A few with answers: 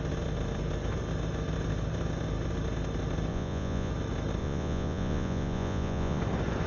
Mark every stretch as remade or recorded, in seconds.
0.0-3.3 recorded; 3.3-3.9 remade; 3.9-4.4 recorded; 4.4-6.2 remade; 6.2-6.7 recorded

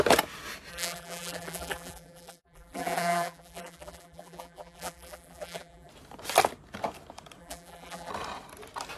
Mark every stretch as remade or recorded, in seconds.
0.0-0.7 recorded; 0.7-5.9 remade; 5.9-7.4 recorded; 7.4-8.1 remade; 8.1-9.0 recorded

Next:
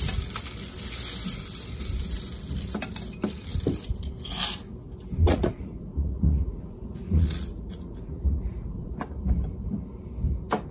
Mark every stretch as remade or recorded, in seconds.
0.0-5.2 recorded; 5.2-9.0 remade; 9.0-10.7 recorded

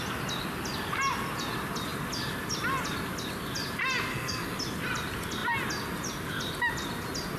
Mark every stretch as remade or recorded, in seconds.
0.0-4.1 recorded; 4.1-4.6 remade; 4.6-7.4 recorded